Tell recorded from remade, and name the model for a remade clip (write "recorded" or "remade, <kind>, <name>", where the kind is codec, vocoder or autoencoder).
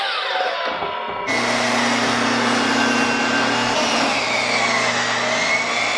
recorded